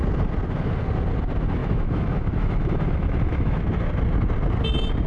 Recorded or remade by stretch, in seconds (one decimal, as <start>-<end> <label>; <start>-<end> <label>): 0.0-1.6 recorded; 1.6-3.6 remade; 3.6-5.1 recorded